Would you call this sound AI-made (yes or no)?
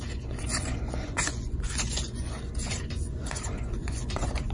yes